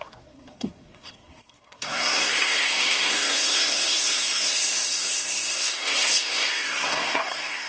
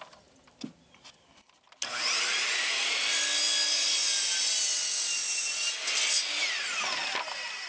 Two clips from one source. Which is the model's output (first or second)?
first